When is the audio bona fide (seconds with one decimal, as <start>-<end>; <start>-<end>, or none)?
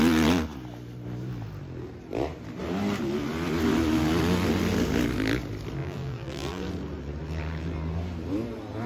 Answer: 0.0-5.8; 6.7-8.9